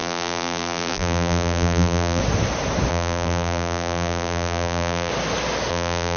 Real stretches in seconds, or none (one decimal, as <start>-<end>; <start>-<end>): 2.2-2.9; 5.1-5.7